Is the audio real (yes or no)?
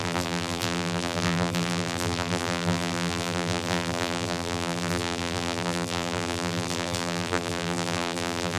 no